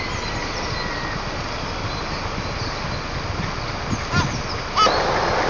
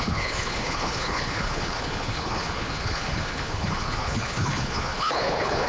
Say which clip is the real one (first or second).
first